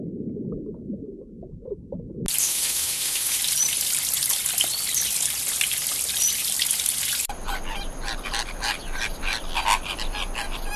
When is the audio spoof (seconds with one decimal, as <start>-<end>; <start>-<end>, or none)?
2.4-3.4